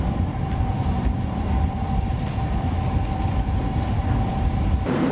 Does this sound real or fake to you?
fake